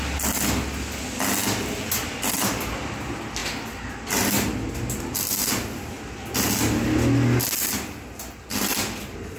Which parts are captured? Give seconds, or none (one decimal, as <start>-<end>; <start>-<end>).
0.0-9.4